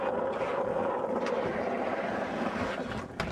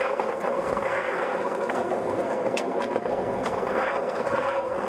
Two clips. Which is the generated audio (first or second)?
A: second